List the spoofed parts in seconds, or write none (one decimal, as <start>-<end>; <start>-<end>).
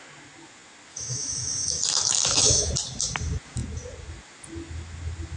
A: 0.9-2.7